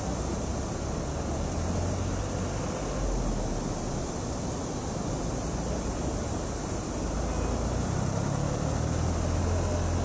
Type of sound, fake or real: real